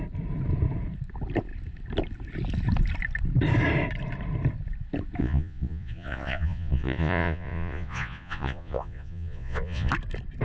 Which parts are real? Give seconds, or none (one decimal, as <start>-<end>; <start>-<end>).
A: 0.0-5.2; 9.9-10.4